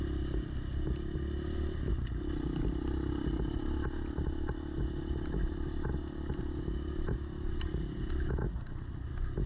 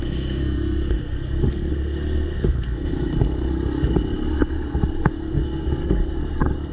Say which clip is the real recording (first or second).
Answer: first